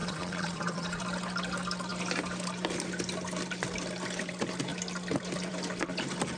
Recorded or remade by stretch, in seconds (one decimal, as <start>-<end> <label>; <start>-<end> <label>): 0.0-1.0 remade; 1.0-6.4 recorded